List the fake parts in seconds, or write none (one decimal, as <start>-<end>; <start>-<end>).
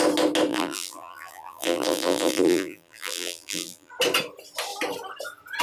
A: 0.5-3.9